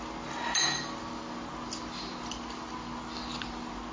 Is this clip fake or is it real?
real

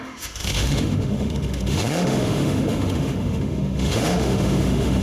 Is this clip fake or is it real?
fake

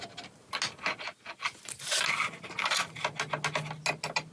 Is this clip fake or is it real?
real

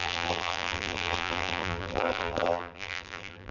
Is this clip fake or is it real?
fake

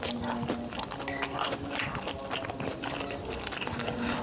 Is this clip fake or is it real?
real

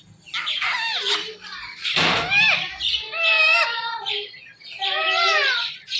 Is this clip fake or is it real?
fake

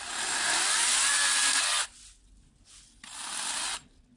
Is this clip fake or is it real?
real